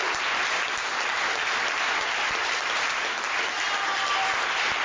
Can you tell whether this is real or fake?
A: real